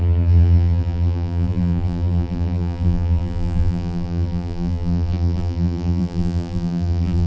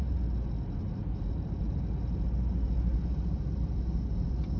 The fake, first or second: first